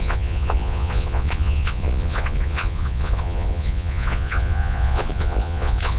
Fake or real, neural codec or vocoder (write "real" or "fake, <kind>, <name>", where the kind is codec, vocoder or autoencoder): fake, vocoder, Vocos